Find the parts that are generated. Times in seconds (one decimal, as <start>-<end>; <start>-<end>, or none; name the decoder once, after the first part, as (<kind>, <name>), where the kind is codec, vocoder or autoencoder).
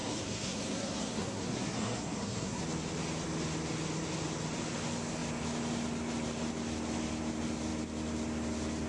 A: 0.0-2.6 (codec, SNAC)